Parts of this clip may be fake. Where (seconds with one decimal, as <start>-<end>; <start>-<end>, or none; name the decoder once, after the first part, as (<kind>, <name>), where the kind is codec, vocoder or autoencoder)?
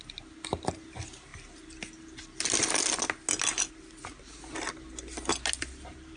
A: none